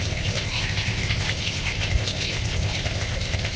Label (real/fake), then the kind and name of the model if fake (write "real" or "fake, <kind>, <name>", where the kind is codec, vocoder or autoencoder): fake, codec, ZipCodec